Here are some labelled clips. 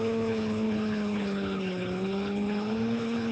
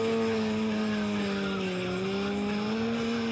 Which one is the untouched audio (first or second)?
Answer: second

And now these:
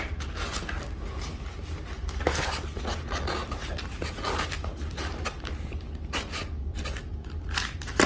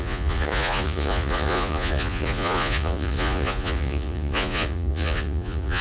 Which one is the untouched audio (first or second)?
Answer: first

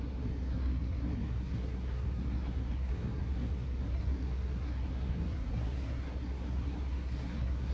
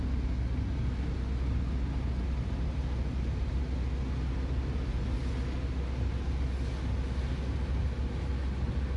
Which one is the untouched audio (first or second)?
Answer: second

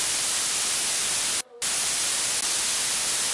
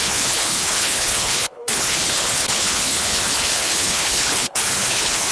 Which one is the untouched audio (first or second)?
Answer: first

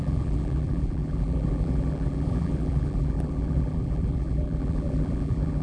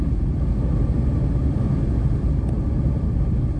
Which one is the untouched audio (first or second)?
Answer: second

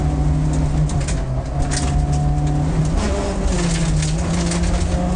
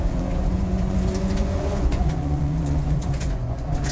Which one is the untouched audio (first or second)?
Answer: first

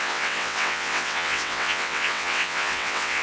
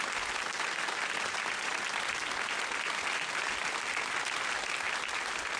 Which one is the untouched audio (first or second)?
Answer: second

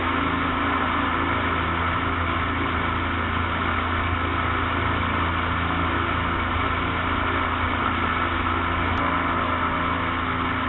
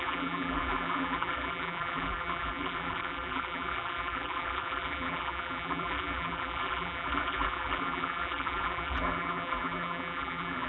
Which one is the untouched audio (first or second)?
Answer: first